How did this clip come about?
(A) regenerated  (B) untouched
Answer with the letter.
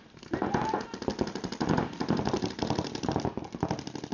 B